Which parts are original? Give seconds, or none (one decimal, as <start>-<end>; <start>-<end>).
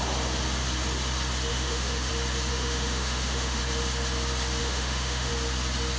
0.0-1.5; 2.1-2.5; 3.6-4.6; 5.3-6.0